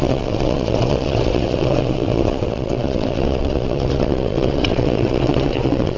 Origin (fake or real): fake